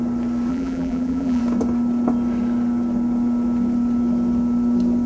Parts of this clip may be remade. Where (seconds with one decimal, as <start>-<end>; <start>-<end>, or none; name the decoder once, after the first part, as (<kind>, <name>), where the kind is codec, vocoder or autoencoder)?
0.5-1.4 (vocoder, BigVGAN v2)